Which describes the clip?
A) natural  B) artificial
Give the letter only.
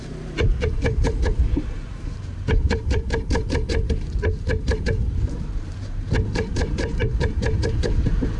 B